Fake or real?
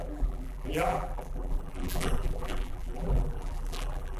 fake